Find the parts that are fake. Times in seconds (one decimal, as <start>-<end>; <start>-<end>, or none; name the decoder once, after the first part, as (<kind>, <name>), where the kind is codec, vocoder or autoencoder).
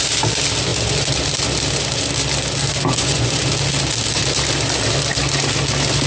2.9-3.4 (vocoder, Vocos)